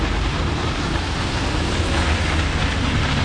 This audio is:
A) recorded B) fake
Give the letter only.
A